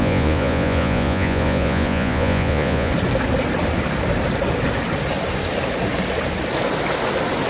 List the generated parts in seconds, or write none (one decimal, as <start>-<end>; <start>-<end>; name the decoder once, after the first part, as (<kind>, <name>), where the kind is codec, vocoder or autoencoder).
0.0-2.9 (vocoder, Vocos)